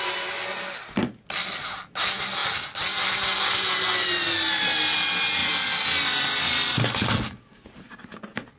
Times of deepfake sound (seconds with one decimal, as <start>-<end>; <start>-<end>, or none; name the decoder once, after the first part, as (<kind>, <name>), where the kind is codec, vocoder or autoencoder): none